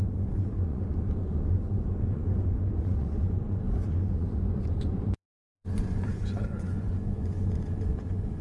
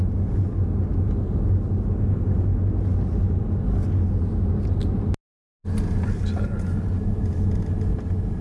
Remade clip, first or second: first